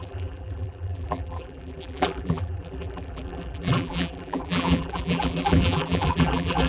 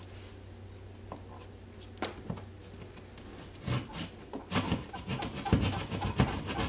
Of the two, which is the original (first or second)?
second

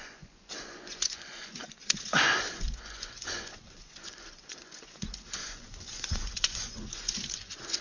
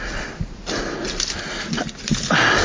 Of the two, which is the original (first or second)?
second